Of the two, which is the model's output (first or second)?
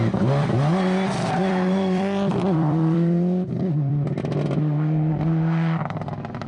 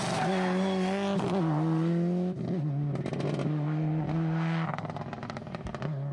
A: first